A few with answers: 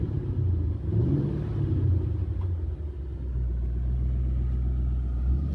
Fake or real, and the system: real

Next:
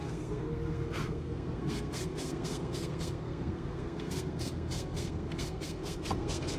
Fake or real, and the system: fake, codec, SNAC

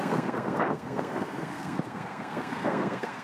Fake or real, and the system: fake, codec, SNAC